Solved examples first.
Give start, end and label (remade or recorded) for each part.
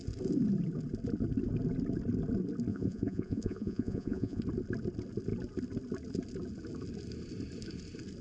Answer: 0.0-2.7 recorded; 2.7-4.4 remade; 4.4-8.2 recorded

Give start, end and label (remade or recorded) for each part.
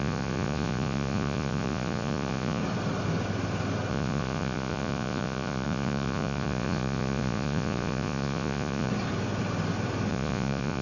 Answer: 0.0-2.6 remade; 2.6-3.9 recorded; 3.9-8.9 remade; 8.9-10.1 recorded; 10.1-10.8 remade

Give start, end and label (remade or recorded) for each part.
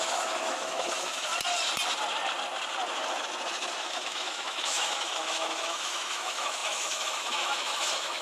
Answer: 0.0-1.3 remade; 1.3-3.8 recorded; 3.8-8.2 remade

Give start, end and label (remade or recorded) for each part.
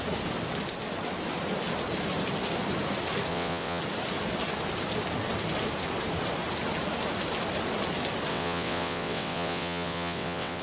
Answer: 0.0-3.3 recorded; 3.3-3.8 remade; 3.8-8.3 recorded; 8.3-10.6 remade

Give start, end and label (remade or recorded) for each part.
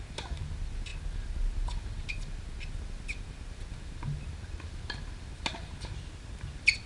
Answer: 0.0-6.9 recorded